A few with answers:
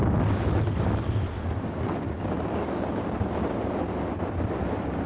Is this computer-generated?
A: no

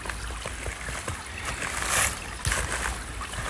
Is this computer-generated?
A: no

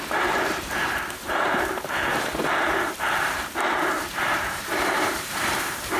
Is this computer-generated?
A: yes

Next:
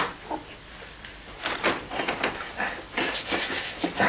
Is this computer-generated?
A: no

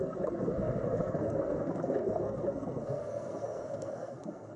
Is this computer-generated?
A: yes